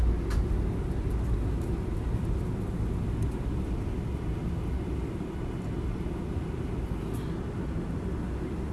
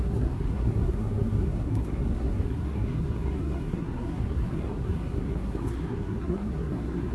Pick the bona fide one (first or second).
first